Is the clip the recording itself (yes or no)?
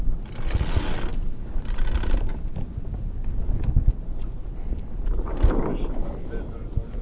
yes